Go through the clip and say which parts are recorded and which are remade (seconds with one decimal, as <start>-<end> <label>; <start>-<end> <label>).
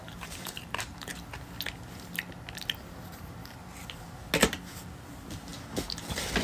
0.0-1.1 remade; 1.1-4.9 recorded; 4.9-5.5 remade; 5.5-6.4 recorded